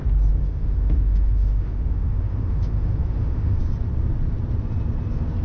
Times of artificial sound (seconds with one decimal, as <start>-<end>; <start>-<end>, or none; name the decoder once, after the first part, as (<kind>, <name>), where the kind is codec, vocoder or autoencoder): 0.4-3.6 (autoencoder, DAC-VAE)